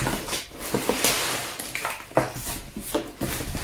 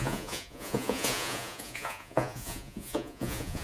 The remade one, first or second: second